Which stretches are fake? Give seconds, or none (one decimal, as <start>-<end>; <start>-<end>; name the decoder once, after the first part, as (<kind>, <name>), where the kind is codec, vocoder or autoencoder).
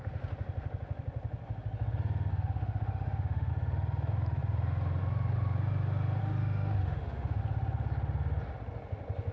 2.3-3.5 (autoencoder, DAC-VAE); 6.2-7.4